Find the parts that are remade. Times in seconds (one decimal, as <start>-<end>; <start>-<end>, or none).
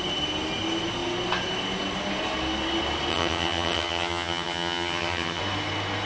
3.1-5.4